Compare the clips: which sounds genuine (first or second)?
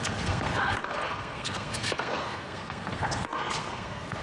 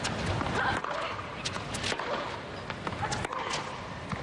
second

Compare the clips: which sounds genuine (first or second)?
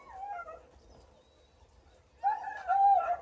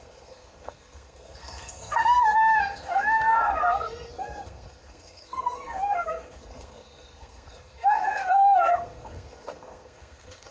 first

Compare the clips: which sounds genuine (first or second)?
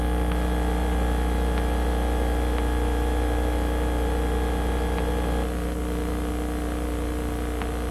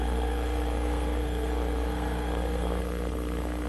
first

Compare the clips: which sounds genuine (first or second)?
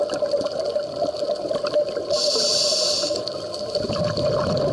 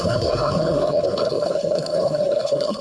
first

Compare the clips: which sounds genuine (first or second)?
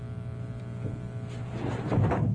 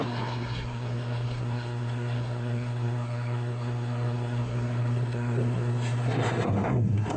first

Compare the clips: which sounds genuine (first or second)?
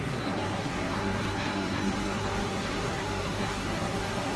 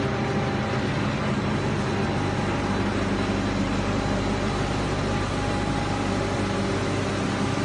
second